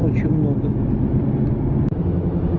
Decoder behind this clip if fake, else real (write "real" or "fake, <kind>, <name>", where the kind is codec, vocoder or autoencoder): real